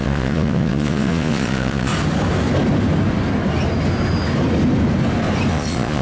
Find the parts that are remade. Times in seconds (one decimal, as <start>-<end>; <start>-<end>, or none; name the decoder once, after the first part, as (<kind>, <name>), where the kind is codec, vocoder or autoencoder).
0.0-1.9 (vocoder, Vocos); 5.5-6.0